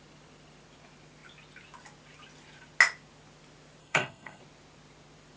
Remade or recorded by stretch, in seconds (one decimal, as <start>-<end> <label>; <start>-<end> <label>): 0.0-3.8 recorded; 3.8-4.4 remade; 4.4-5.4 recorded